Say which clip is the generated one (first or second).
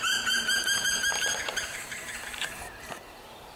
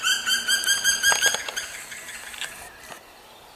first